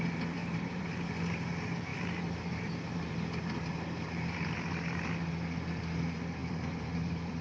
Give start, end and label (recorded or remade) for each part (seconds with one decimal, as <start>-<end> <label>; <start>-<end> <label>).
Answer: 0.0-0.4 recorded; 0.4-1.2 remade; 1.2-1.9 recorded; 1.9-4.7 remade; 4.7-6.4 recorded; 6.4-7.4 remade

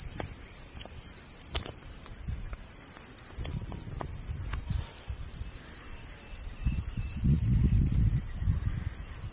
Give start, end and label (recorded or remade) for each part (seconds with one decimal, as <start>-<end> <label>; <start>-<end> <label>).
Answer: 0.0-2.1 remade; 2.1-2.7 recorded; 2.7-9.3 remade

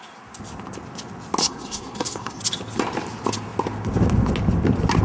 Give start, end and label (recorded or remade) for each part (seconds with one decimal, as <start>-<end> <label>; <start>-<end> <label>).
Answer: 0.0-1.4 recorded; 1.4-2.4 remade; 2.4-5.0 recorded

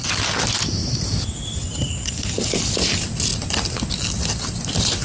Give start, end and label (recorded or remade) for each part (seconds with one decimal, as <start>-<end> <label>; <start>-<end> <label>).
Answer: 0.0-0.8 recorded; 0.8-2.1 remade; 2.1-5.0 recorded

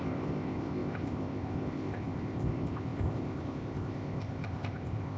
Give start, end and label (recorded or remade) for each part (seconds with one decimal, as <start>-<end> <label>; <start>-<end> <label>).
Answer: 0.0-5.2 remade

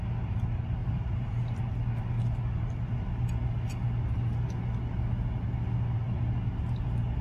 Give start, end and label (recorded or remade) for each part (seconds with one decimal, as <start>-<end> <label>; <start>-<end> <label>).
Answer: 0.0-0.8 recorded; 0.8-1.6 remade; 1.6-7.2 recorded